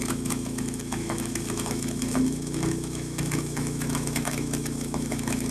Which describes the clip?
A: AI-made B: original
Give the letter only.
A